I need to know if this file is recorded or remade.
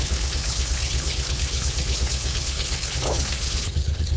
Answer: remade